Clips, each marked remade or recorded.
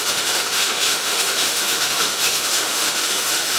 remade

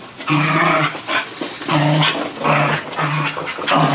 recorded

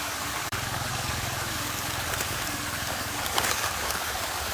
remade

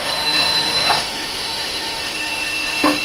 remade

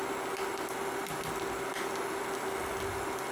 recorded